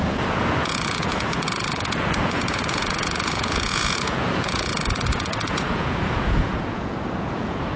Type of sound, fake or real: fake